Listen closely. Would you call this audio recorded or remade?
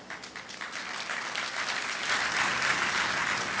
recorded